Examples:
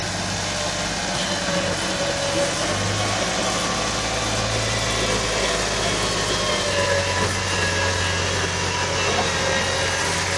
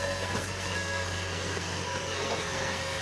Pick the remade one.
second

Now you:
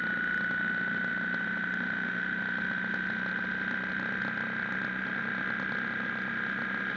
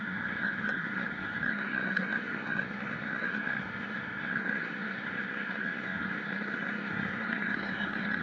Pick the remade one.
second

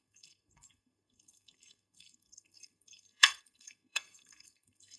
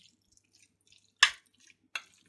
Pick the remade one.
first